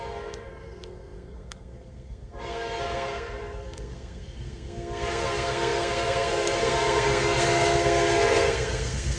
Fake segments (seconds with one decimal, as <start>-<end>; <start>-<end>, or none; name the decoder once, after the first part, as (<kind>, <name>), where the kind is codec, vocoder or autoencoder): 0.0-9.2 (codec, SNAC)